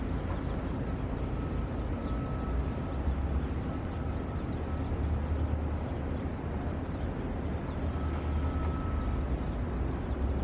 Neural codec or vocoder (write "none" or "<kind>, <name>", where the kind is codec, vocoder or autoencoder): none